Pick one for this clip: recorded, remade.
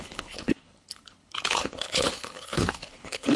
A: remade